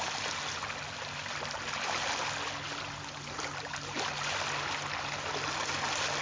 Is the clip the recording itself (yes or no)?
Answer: yes